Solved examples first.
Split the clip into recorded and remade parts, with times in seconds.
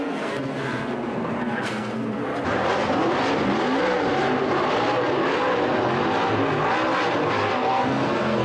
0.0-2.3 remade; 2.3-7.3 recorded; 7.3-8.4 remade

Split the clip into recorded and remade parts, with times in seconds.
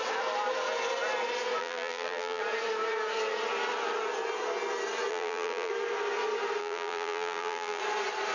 0.0-1.6 recorded; 1.6-2.4 remade; 2.4-5.1 recorded; 5.1-5.7 remade; 5.7-6.6 recorded; 6.6-7.8 remade; 7.8-8.3 recorded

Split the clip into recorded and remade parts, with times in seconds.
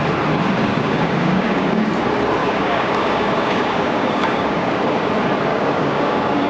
0.0-0.6 recorded; 0.6-1.9 remade; 1.9-2.4 recorded; 2.4-5.1 remade; 5.1-5.5 recorded; 5.5-6.5 remade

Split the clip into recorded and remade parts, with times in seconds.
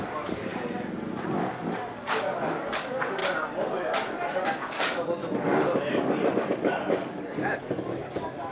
0.0-0.5 remade; 0.5-1.4 recorded; 1.4-3.2 remade; 3.2-4.3 recorded; 4.3-5.2 remade; 5.2-5.9 recorded; 5.9-8.5 remade